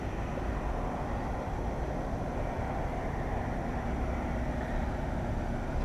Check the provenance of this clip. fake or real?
real